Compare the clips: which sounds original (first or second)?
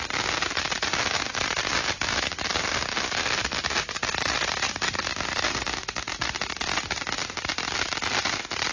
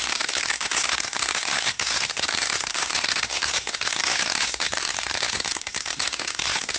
first